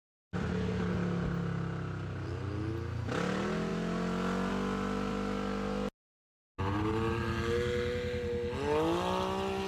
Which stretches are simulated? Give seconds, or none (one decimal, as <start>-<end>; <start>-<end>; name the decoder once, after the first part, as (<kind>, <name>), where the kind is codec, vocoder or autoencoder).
none